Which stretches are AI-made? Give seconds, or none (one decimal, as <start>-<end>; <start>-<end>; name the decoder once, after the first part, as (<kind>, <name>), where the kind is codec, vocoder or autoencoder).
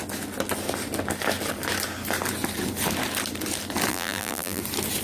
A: 3.9-4.6 (vocoder, BigVGAN v2)